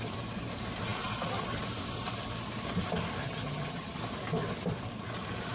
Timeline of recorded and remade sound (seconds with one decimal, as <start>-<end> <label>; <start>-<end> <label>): 0.0-3.2 recorded; 3.2-4.0 remade; 4.0-5.5 recorded